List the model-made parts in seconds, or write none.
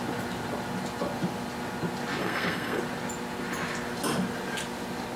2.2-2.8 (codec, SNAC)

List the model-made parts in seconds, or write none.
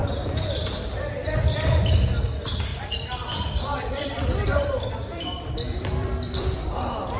0.0-0.6 (vocoder, BigVGAN v2); 1.2-1.8; 2.7-7.2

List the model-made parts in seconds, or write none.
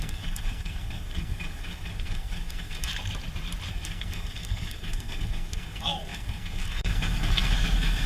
0.0-2.9 (codec, SNAC); 3.7-8.1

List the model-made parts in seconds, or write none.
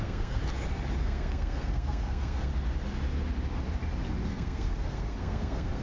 0.0-0.4 (codec, SNAC); 1.0-2.5; 4.3-5.8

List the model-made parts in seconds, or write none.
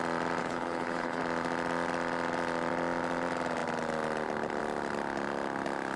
0.4-1.2 (codec, HILCodec)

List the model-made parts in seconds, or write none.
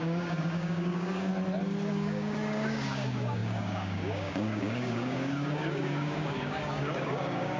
0.0-1.3 (codec, DAC); 1.9-7.6